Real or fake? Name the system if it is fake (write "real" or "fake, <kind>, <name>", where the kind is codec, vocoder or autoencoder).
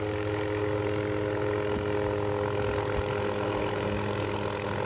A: real